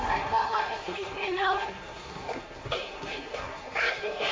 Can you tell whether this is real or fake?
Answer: fake